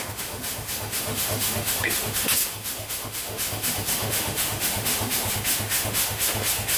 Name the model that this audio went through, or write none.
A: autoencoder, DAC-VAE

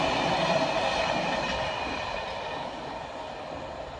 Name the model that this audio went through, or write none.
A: none